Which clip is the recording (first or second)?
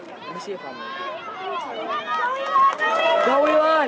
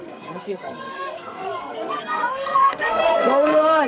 first